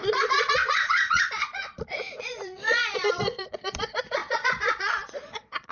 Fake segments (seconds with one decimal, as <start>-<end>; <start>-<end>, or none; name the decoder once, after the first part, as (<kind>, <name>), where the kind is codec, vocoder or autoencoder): 0.0-5.7 (vocoder, Vocos)